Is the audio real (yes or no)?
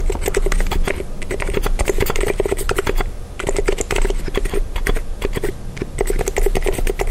yes